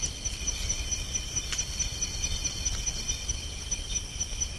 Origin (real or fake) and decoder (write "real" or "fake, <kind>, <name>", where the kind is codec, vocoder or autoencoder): real